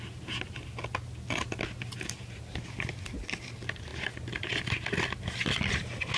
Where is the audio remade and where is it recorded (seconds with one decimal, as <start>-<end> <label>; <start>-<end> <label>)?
0.0-6.2 recorded

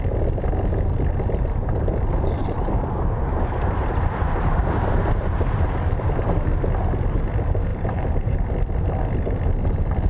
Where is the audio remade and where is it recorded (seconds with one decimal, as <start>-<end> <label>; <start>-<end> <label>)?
0.0-2.4 recorded; 2.4-6.1 remade; 6.1-7.7 recorded; 7.7-8.5 remade; 8.5-10.1 recorded

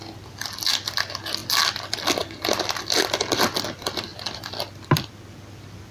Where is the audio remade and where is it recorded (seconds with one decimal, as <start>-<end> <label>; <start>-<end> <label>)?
0.0-5.9 recorded

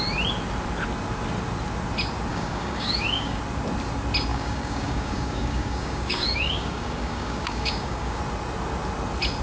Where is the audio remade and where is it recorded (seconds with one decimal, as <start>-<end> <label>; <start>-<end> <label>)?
0.0-2.3 recorded; 2.3-3.4 remade; 3.4-4.3 recorded; 4.3-8.2 remade; 8.2-9.4 recorded

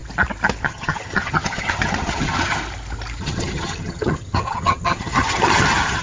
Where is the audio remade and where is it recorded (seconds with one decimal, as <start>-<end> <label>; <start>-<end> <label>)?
0.0-0.6 recorded; 0.6-2.6 remade; 2.6-3.2 recorded; 3.2-6.0 remade